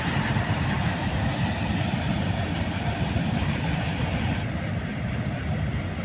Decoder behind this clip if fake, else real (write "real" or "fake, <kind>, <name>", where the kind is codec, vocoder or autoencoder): real